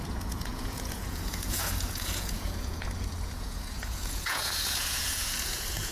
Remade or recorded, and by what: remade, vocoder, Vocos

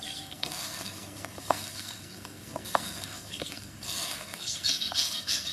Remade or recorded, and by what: remade, codec, SNAC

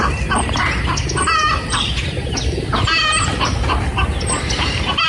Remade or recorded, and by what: recorded